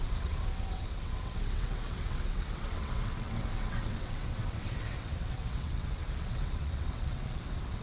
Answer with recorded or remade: remade